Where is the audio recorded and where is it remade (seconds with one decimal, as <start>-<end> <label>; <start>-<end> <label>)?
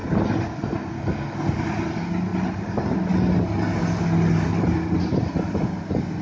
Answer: 0.0-6.2 recorded